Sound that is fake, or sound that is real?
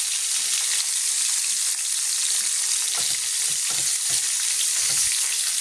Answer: real